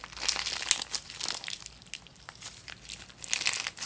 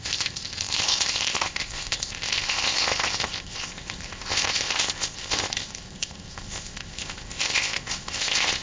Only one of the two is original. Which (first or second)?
first